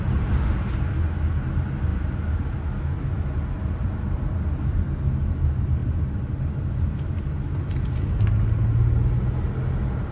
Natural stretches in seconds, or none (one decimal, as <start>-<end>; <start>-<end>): 0.0-10.1